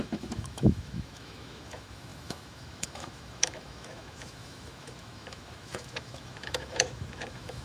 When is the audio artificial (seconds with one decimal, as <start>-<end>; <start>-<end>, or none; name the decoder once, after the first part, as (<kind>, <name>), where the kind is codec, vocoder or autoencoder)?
0.0-7.6 (autoencoder, DAC-VAE)